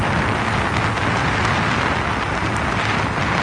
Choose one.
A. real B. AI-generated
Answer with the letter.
A